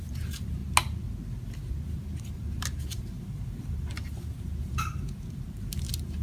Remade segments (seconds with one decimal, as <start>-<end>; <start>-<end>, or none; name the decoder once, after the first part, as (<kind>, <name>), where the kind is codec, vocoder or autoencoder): 0.0-0.6 (vocoder, BigVGAN v2); 1.7-6.2